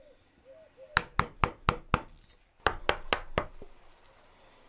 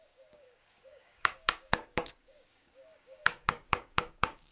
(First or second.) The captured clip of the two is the first